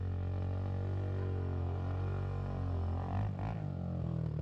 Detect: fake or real real